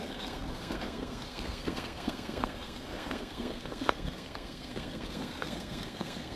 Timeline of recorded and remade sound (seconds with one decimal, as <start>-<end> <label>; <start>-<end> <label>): 0.0-6.4 remade